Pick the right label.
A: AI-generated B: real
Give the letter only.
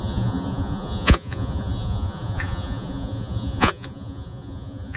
A